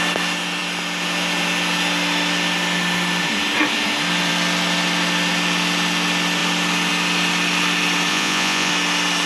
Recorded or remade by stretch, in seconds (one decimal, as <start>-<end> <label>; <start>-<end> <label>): 0.0-8.1 recorded; 8.1-8.7 remade; 8.7-9.3 recorded